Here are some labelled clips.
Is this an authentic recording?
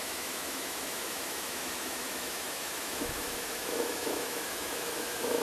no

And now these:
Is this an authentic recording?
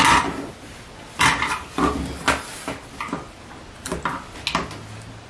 yes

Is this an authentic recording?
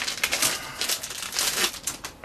yes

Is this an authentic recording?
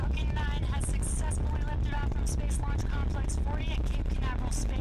yes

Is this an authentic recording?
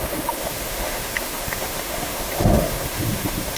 no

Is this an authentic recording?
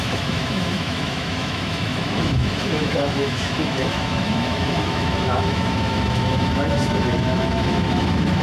no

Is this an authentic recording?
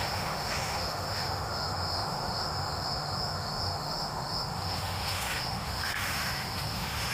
no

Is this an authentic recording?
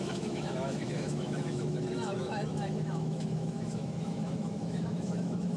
no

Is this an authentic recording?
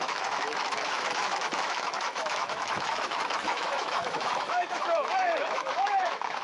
no